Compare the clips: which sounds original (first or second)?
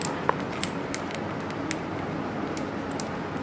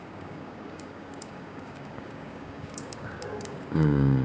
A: first